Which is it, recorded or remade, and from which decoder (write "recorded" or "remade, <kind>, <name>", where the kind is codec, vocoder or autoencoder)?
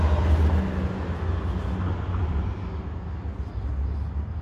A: recorded